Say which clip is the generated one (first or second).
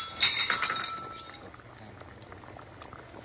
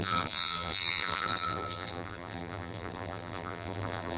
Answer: second